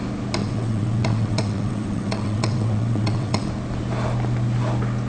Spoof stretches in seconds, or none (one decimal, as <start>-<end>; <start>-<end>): 0.4-3.5